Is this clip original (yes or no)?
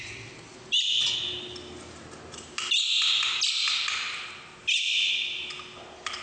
yes